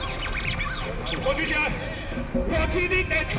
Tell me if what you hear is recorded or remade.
recorded